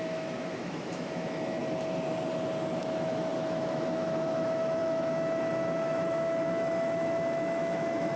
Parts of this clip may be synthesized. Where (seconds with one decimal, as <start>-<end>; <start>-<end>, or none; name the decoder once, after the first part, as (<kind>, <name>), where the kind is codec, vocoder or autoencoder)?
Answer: 0.0-1.6 (autoencoder, DAC-VAE); 2.8-8.2